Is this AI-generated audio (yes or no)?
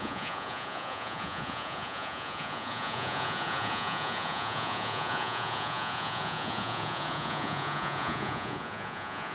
yes